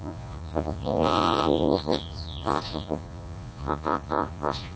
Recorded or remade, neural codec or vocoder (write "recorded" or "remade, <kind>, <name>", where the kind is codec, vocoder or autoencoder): remade, vocoder, Vocos